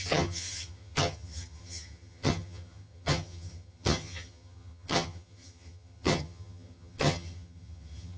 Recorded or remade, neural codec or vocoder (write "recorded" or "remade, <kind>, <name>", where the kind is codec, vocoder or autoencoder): remade, vocoder, HiFi-GAN